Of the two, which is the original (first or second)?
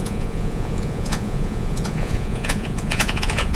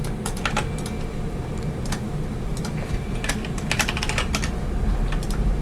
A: second